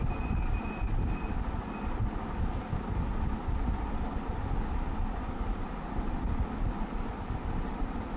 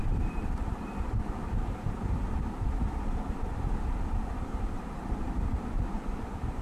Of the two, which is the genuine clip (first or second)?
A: first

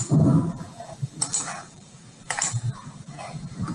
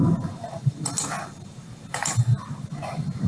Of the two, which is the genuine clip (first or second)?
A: second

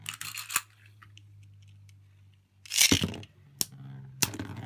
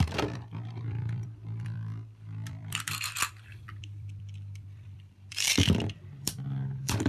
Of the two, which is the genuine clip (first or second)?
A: first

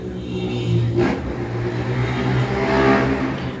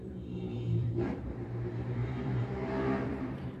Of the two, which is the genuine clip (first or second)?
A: first